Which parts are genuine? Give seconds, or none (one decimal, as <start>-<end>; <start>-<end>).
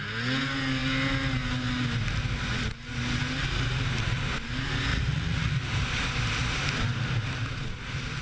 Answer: 0.0-4.9; 5.5-8.2